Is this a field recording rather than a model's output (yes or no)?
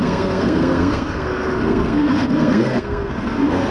no